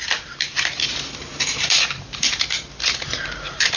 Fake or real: fake